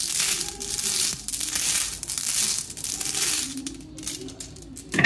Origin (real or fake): real